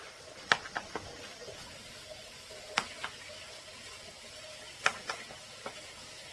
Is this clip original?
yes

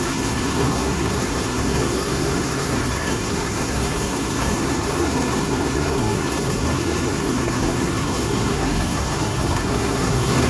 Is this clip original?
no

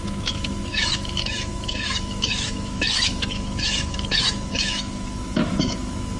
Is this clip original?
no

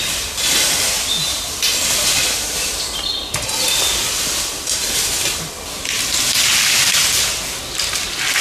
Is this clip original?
yes